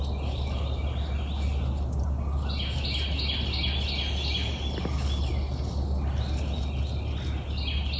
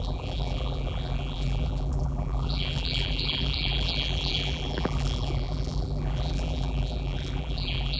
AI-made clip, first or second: second